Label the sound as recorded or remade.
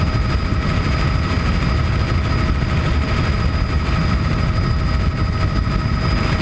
recorded